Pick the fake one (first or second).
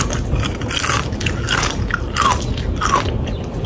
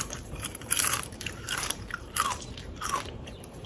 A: second